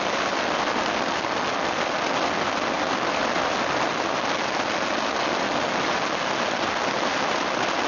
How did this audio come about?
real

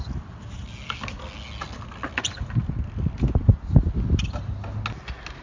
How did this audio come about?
real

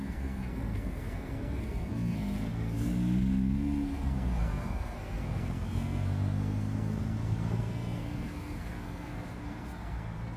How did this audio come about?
fake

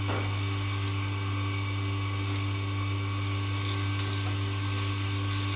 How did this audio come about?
real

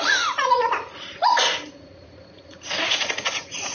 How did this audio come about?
fake